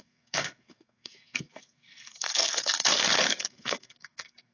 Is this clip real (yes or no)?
no